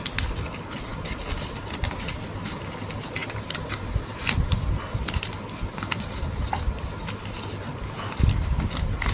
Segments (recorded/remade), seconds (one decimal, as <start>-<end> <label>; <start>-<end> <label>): 0.0-9.1 recorded